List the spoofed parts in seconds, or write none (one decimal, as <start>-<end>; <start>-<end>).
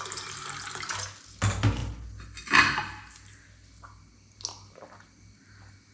none